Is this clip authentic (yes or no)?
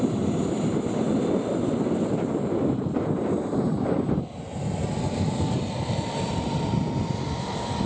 yes